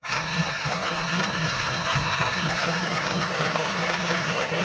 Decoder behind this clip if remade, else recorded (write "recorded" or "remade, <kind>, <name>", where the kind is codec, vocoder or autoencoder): remade, codec, SNAC